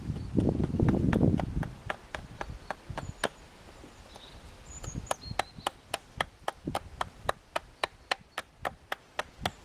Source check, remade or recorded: recorded